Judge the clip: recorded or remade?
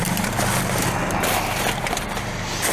recorded